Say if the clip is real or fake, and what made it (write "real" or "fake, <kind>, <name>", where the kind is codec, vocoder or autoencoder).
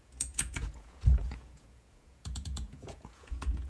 fake, vocoder, Vocos